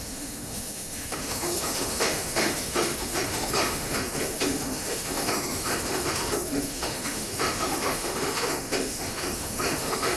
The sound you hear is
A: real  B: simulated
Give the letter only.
B